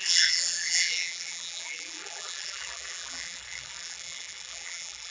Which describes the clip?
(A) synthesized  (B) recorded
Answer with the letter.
A